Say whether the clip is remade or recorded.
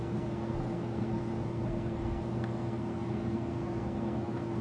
remade